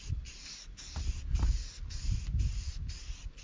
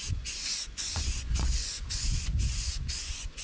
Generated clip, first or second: second